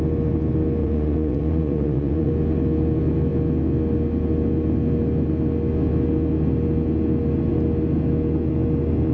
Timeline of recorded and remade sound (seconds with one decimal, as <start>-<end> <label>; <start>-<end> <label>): 0.0-0.8 recorded; 0.8-2.3 remade; 2.3-9.1 recorded